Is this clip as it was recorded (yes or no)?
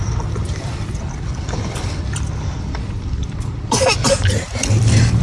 no